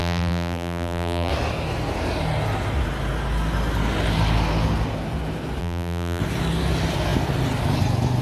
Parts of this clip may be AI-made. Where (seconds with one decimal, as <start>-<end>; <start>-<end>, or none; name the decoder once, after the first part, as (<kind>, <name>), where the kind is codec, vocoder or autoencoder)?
0.0-1.3 (vocoder, BigVGAN v2); 5.6-6.2